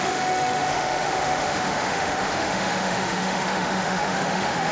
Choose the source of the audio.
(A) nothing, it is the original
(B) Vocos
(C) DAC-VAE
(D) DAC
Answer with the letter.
C